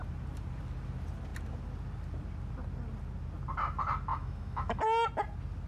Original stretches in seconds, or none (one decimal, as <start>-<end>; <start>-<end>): 0.0-4.1; 4.8-5.7